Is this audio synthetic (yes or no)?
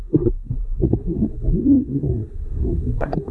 yes